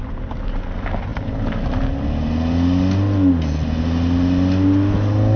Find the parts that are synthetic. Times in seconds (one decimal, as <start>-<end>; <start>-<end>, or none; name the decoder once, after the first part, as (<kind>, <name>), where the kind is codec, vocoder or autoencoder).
none